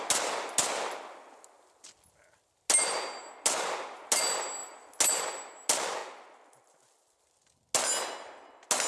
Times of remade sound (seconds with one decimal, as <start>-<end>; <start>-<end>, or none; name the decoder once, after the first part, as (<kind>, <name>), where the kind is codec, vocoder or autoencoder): none